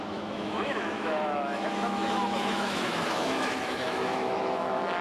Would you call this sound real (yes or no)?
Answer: no